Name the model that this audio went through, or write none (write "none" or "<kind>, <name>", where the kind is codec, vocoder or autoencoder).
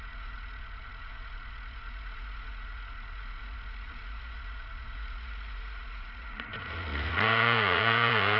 vocoder, Vocos